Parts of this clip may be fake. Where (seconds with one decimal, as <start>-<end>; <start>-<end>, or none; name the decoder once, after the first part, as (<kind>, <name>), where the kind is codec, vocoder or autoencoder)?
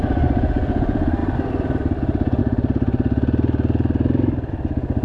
none